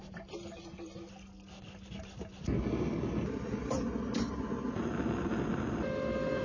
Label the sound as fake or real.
real